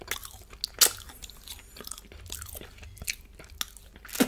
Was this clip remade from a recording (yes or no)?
no